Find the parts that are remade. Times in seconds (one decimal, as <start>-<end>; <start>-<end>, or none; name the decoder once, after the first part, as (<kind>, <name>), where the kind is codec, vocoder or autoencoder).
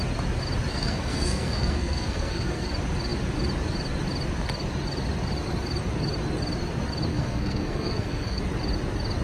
0.7-2.7 (codec, SNAC); 7.1-8.4